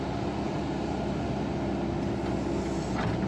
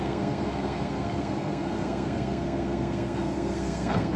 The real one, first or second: first